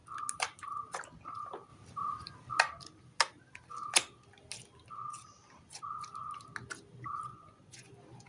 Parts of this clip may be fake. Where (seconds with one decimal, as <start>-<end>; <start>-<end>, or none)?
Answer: 7.3-7.9